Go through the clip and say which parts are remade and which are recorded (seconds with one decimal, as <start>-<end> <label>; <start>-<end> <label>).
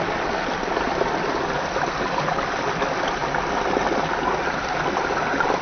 0.0-5.6 recorded